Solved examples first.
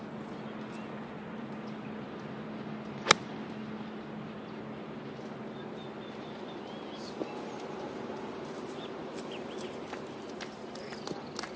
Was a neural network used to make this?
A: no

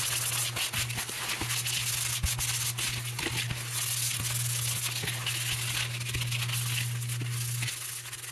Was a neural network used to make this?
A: no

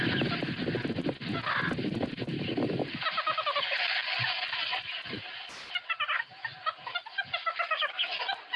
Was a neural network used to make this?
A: no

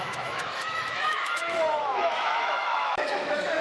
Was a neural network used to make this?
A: yes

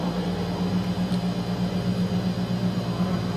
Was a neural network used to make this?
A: no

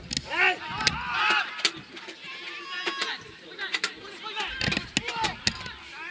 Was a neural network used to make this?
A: no